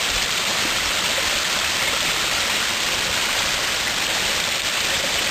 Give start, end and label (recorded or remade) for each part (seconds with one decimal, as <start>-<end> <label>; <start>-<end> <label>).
0.0-5.3 recorded